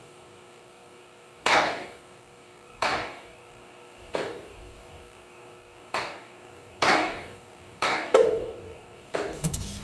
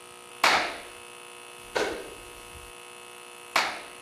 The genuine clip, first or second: second